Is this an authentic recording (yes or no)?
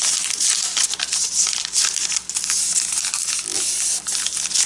yes